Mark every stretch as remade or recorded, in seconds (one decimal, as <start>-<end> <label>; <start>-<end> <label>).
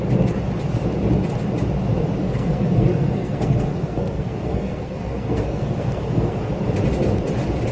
0.0-2.2 recorded; 2.2-6.5 remade; 6.5-7.7 recorded